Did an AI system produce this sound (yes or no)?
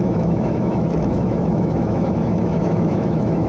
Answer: yes